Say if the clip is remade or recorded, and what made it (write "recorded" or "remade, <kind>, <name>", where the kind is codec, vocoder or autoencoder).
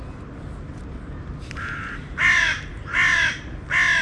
recorded